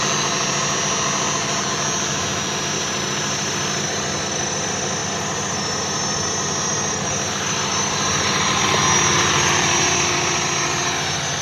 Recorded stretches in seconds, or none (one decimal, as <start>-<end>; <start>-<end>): 0.0-11.4